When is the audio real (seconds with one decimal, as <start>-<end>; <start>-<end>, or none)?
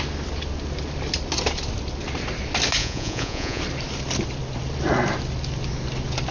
0.0-2.8; 3.6-6.3